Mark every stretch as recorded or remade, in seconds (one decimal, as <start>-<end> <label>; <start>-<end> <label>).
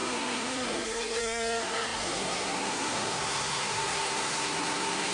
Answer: 0.0-5.1 remade